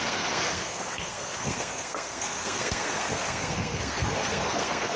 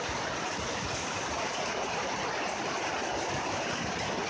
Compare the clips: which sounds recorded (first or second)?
second